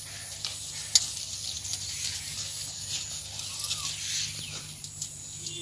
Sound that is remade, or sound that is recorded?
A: recorded